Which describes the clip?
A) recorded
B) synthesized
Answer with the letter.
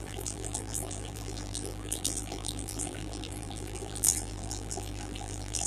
B